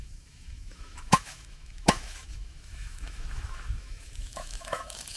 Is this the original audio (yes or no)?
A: no